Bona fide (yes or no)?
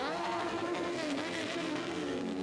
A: no